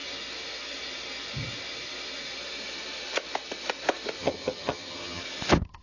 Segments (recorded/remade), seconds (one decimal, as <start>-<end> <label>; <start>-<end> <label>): 0.0-4.2 recorded; 4.2-5.2 remade; 5.2-5.8 recorded